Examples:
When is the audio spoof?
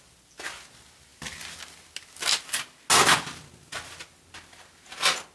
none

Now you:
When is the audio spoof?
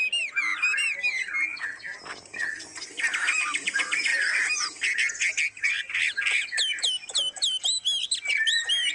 none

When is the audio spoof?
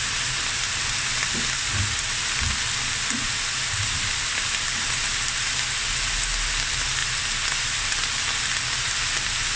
none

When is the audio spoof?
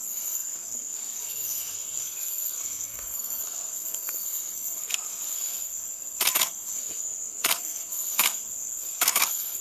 0.0-9.6 (codec, SNAC)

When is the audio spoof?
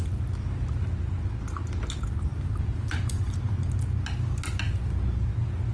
2.3-3.4 (vocoder, BigVGAN v2)